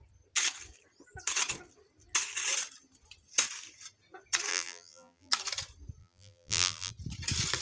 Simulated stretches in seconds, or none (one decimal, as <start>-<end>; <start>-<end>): 4.5-5.3; 6.0-6.9